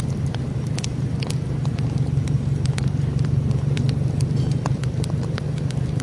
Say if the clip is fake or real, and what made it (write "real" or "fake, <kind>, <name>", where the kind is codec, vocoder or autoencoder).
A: fake, vocoder, BigVGAN v2